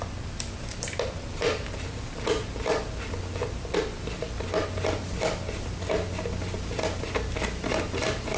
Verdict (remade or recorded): recorded